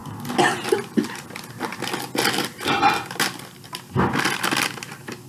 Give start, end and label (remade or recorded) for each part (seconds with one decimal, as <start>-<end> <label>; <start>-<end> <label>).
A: 0.0-5.3 recorded